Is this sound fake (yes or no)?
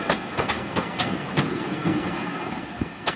yes